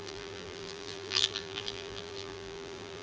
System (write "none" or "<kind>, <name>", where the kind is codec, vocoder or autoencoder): vocoder, BigVGAN v2